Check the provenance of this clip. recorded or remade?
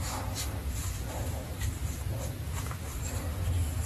remade